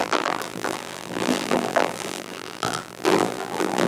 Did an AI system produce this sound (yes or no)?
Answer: yes